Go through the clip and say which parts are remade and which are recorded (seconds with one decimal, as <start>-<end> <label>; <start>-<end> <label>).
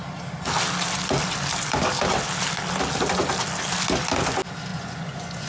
0.0-4.7 recorded; 4.7-5.5 remade